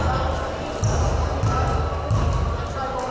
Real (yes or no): yes